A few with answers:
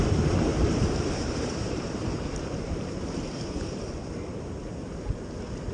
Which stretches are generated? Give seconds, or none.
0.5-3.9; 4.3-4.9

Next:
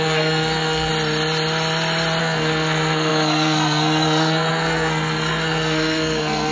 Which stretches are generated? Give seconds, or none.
0.0-0.9; 2.2-6.5

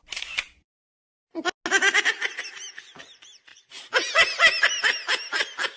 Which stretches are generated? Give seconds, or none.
none

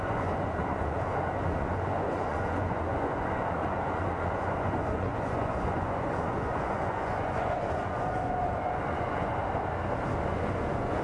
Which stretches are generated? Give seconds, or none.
0.0-9.4; 10.2-11.0

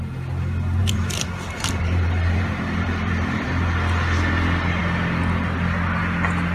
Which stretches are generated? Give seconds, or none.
0.8-3.5

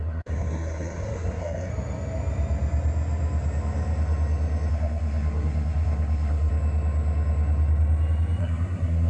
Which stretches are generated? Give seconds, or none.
0.0-1.7; 4.7-6.5; 8.4-9.1

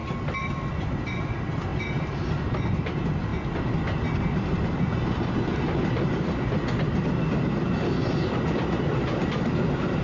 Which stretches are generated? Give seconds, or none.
none